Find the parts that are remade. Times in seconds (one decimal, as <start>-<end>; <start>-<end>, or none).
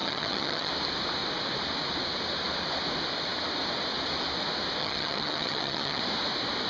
0.0-0.7; 4.8-6.0